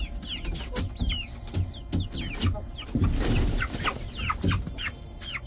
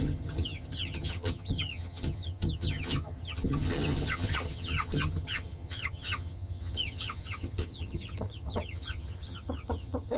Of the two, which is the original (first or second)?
first